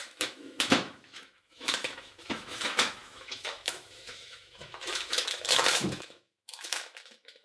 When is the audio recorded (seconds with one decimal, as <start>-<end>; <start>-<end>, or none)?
none